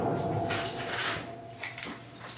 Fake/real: real